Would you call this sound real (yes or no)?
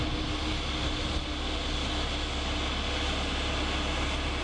yes